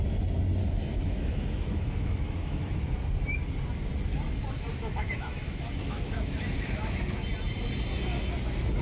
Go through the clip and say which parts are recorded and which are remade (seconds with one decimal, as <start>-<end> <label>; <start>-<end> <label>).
0.0-0.6 recorded; 0.6-2.8 remade; 2.8-4.7 recorded; 4.7-7.2 remade; 7.2-8.8 recorded